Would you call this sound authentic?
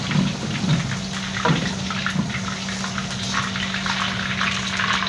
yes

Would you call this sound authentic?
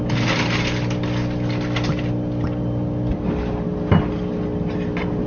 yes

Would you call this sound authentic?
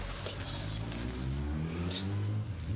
yes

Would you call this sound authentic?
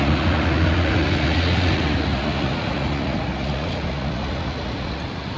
no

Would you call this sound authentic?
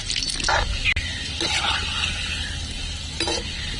yes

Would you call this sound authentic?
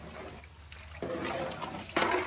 yes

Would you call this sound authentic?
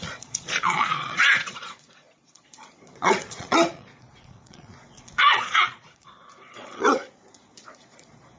no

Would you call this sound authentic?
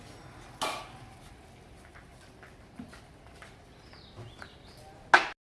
yes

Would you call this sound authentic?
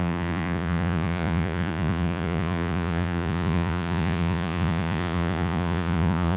no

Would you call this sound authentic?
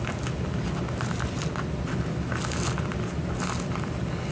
yes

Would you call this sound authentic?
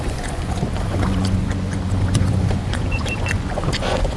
no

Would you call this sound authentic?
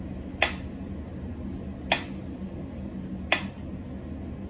yes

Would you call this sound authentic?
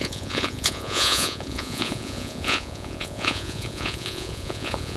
no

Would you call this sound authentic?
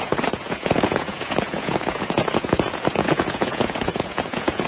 no